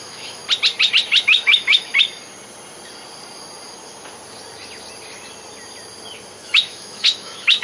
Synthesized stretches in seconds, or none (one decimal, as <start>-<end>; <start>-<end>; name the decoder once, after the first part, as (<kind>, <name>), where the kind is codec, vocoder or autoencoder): 0.0-0.4 (autoencoder, DAC-VAE); 1.2-1.9; 6.4-7.6